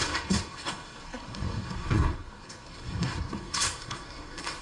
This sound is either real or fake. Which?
fake